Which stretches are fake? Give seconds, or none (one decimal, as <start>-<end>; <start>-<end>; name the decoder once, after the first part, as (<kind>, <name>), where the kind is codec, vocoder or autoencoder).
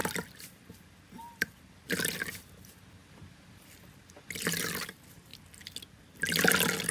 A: none